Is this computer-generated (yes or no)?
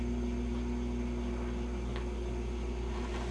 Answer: no